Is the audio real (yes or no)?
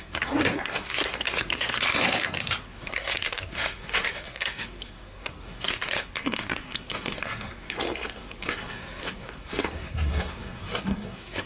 no